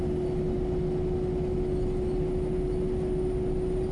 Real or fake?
real